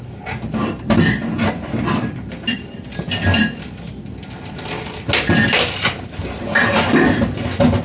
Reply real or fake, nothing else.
real